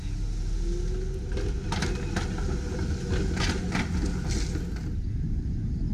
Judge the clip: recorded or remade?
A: recorded